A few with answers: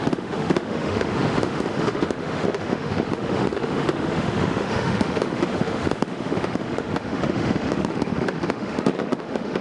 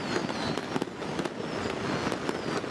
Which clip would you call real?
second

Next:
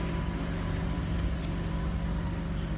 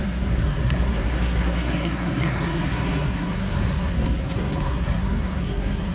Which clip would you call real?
first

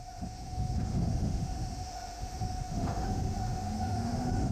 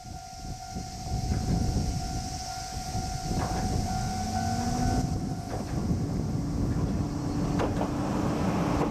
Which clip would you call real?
second